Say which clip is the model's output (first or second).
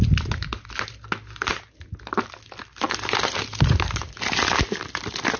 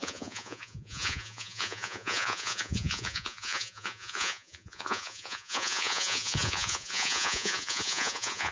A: second